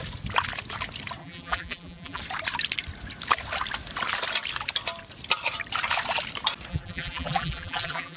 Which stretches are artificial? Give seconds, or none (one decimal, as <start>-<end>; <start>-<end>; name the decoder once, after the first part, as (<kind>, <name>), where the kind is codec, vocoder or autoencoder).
1.2-2.2 (vocoder, BigVGAN v2); 6.7-8.2